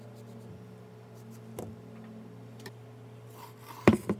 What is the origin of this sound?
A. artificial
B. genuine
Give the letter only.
B